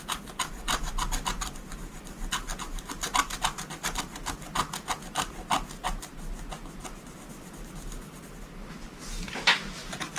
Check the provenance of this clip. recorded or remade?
recorded